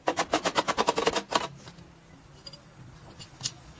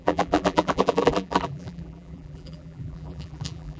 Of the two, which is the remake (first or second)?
second